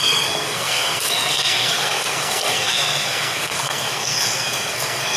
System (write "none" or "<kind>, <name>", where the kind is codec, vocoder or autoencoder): codec, SNAC